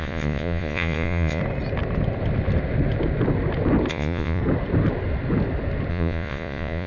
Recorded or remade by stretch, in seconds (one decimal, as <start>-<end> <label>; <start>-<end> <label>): 0.0-1.4 remade; 1.4-3.9 recorded; 3.9-4.4 remade; 4.4-5.9 recorded; 5.9-6.9 remade